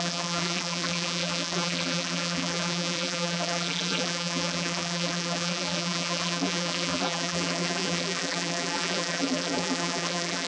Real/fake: fake